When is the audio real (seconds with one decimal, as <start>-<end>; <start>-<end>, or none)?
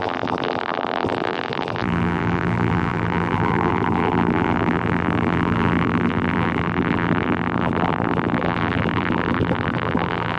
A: none